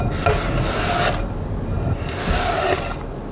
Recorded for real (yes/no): yes